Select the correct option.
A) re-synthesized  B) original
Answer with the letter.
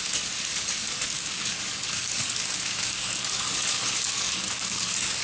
A